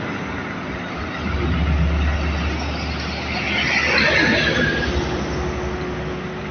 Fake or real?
real